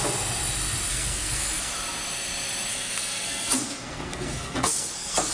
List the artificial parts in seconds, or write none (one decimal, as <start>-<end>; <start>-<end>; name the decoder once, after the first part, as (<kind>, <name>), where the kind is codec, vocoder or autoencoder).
0.9-1.7 (codec, SNAC); 2.7-5.3